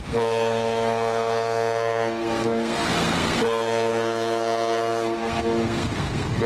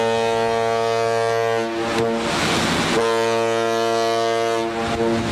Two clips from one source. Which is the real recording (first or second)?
second